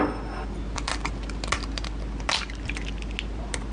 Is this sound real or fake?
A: real